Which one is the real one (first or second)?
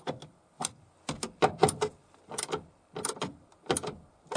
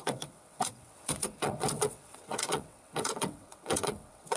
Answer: first